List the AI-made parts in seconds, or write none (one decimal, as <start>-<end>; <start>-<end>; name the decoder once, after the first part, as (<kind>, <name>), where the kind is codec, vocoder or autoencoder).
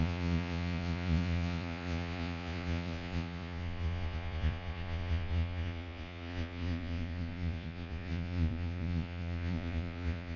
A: 0.0-10.4 (vocoder, Vocos)